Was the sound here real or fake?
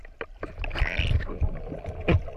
real